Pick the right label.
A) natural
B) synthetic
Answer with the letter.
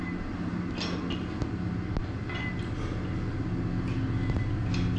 A